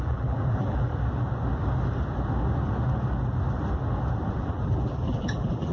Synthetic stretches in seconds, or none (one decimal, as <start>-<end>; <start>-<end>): 0.0-0.9; 4.3-5.7